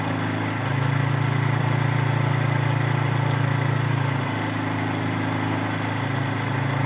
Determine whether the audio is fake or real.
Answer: real